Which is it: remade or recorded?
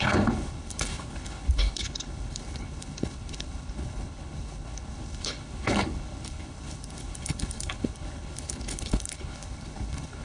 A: remade